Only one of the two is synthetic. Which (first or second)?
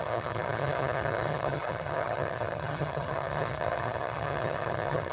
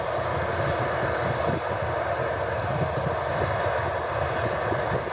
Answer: first